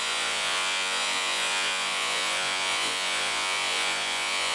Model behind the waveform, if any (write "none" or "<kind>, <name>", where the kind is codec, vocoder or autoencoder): vocoder, Vocos